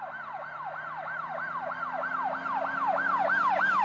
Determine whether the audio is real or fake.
real